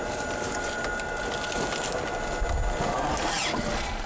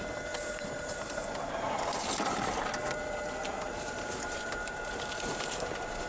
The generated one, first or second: second